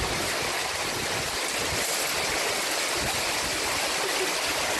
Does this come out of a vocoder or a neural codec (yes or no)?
no